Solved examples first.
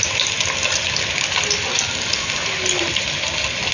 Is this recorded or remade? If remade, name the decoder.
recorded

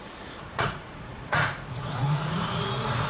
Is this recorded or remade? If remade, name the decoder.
remade, vocoder, Vocos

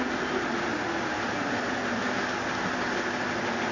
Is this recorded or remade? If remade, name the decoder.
recorded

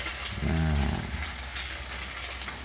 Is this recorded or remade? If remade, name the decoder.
recorded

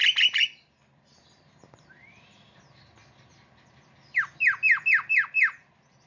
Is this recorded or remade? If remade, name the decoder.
recorded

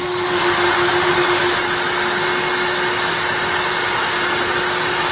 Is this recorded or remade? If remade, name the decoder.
recorded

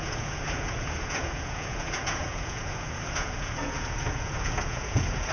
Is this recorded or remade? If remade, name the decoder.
remade, vocoder, Vocos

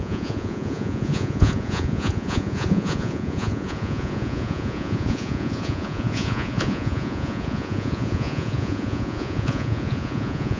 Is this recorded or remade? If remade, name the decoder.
remade, vocoder, Vocos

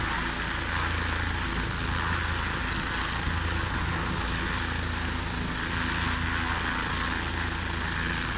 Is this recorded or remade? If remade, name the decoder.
recorded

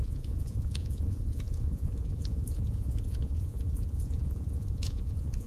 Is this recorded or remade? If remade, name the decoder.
remade, vocoder, Vocos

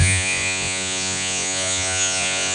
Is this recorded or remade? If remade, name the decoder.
remade, vocoder, Vocos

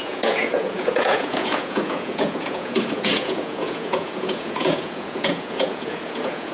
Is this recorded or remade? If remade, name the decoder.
remade, vocoder, Vocos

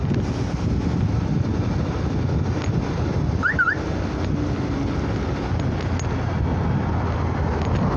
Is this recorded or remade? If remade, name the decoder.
recorded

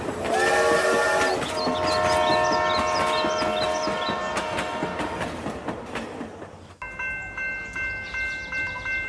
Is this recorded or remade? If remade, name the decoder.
recorded